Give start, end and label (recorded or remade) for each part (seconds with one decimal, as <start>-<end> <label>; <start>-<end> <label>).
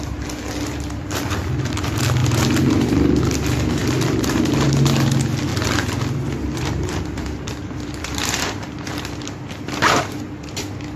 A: 0.0-2.2 recorded; 2.2-3.2 remade; 3.2-3.8 recorded; 3.8-4.5 remade; 4.5-5.5 recorded; 5.5-9.1 remade; 9.1-11.0 recorded